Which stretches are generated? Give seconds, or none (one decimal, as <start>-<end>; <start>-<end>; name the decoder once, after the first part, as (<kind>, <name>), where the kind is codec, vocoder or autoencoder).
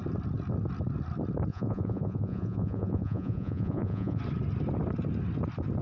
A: 1.5-4.2 (vocoder, Vocos)